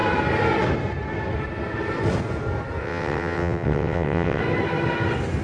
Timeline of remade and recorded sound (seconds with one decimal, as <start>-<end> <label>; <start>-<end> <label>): 0.0-2.8 recorded; 2.8-4.4 remade; 4.4-5.4 recorded